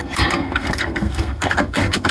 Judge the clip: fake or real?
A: fake